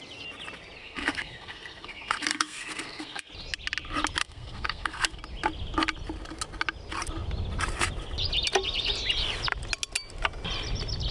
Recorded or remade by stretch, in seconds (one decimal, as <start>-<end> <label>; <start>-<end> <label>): 0.0-0.8 recorded; 0.8-3.3 remade; 3.3-4.2 recorded; 4.2-5.2 remade; 5.2-11.1 recorded